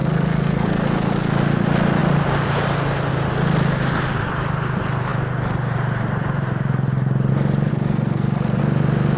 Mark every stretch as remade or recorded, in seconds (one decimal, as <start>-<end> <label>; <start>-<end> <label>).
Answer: 0.0-1.3 remade; 1.3-7.7 recorded; 7.7-8.6 remade; 8.6-9.2 recorded